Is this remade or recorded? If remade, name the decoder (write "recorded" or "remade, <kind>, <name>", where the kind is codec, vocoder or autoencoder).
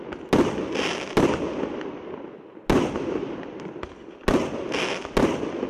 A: recorded